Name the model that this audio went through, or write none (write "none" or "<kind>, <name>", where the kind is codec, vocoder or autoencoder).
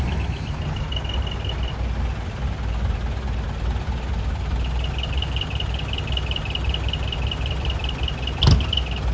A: none